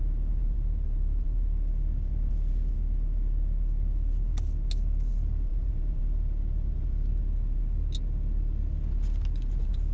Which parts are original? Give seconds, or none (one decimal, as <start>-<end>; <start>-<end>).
0.0-0.4; 1.4-5.5; 6.0-9.9